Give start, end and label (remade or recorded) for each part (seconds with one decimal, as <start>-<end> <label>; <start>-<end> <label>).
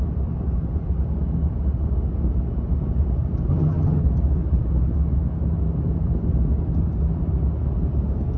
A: 0.0-3.5 recorded; 3.5-4.0 remade; 4.0-8.4 recorded